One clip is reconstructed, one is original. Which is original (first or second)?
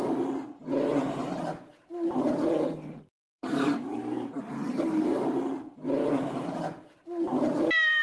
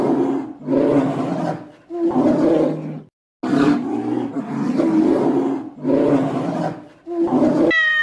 second